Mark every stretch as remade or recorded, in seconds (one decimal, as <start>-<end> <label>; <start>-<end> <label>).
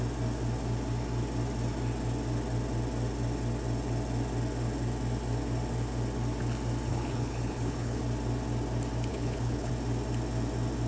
0.0-6.9 recorded; 6.9-8.0 remade; 8.0-9.1 recorded; 9.1-9.7 remade; 9.7-10.9 recorded